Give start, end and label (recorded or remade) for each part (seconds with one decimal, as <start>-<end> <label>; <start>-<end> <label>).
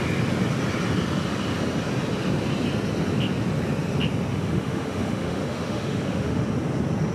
0.0-4.3 recorded; 4.3-6.5 remade; 6.5-7.1 recorded